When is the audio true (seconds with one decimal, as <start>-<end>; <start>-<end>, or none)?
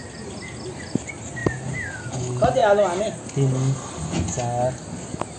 0.0-5.4